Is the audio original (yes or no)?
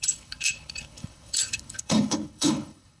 no